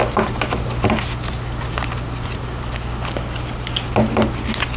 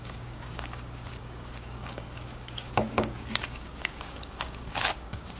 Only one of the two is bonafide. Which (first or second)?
first